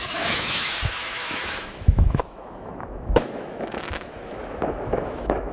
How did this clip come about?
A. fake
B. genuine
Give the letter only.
A